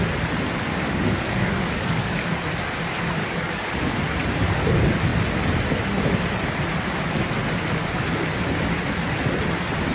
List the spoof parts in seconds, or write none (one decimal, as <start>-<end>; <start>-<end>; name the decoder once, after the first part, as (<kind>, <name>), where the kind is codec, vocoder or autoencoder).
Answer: 0.7-2.4 (codec, DAC); 3.2-4.0